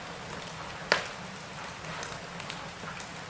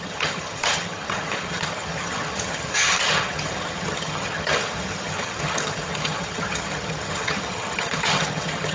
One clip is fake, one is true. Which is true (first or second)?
first